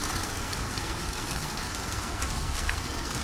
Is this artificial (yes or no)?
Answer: yes